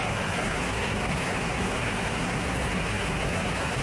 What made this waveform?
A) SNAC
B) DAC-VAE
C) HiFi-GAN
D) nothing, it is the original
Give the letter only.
A